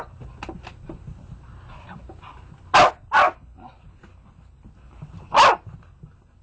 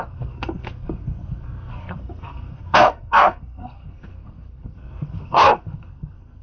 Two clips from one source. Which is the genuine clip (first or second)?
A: first